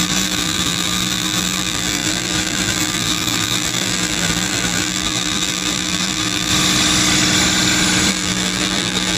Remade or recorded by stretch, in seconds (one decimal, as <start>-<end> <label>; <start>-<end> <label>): 0.0-6.5 remade; 6.5-8.1 recorded; 8.1-9.2 remade